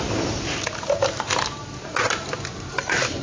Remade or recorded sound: recorded